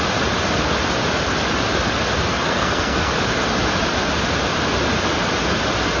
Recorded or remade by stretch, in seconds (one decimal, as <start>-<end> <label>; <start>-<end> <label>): 0.0-2.3 recorded; 2.3-3.1 remade; 3.1-6.0 recorded